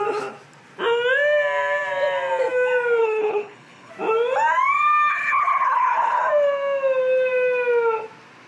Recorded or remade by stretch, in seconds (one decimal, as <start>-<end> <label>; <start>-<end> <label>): 0.0-3.0 recorded; 3.0-3.9 remade; 3.9-5.1 recorded; 5.1-6.2 remade; 6.2-8.5 recorded